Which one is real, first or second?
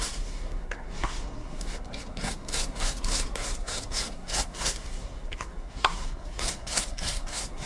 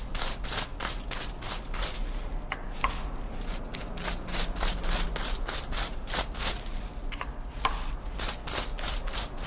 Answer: second